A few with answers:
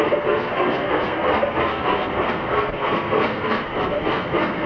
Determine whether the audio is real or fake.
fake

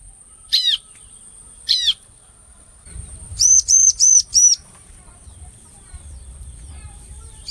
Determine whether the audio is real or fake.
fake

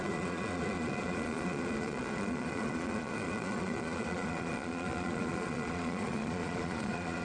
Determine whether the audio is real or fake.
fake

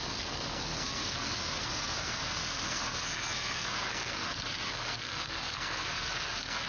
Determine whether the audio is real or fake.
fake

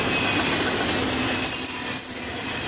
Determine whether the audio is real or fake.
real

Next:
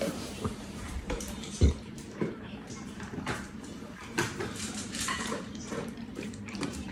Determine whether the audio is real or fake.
fake